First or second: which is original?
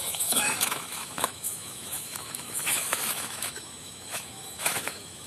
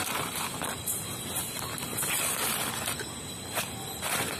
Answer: second